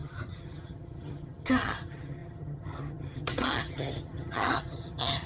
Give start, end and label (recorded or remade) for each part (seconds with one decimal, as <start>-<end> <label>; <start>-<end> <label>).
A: 0.0-5.3 remade